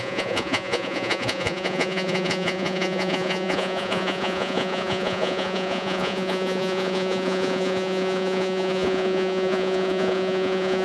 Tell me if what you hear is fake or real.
fake